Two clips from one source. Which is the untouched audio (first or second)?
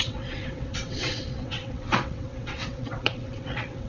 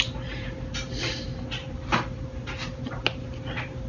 second